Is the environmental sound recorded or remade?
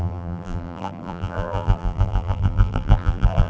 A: remade